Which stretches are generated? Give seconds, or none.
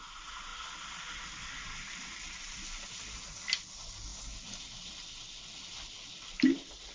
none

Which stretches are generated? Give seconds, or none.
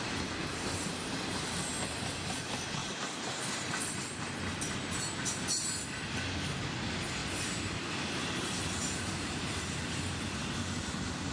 2.8-3.5; 7.2-10.9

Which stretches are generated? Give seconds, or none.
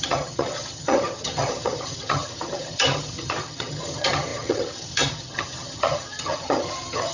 0.0-7.1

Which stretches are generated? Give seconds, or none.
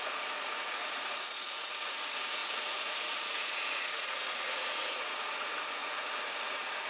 0.0-6.9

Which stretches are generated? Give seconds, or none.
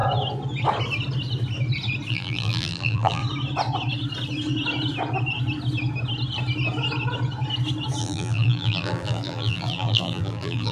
2.1-3.2; 8.0-10.7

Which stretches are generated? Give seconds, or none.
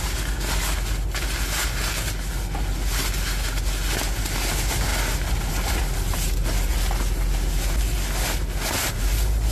none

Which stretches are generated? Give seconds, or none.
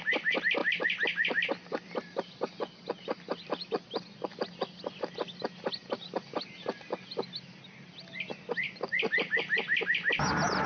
none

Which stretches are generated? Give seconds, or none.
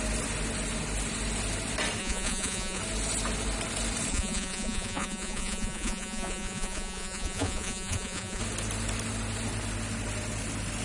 2.0-2.8; 4.1-8.4